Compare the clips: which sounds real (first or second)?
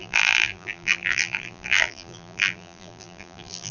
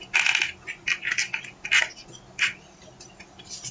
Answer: second